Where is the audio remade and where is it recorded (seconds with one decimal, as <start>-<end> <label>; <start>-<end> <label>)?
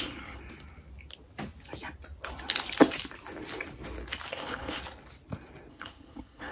0.0-0.4 remade; 0.4-4.3 recorded; 4.3-4.8 remade; 4.8-5.7 recorded; 5.7-6.5 remade